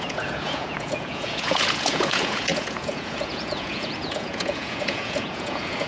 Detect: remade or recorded remade